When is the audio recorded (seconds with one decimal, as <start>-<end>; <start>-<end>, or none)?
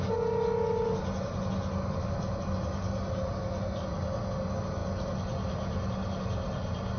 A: 0.0-7.0